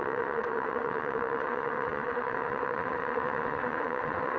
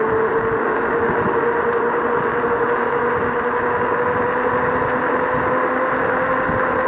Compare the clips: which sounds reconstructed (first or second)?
first